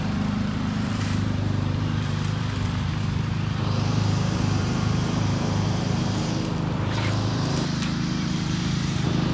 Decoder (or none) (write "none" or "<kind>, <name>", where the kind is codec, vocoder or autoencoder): vocoder, BigVGAN v2